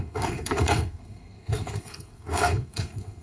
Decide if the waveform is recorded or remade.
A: remade